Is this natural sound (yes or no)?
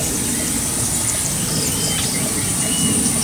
yes